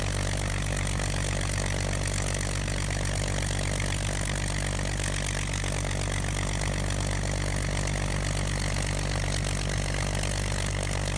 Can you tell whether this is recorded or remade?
recorded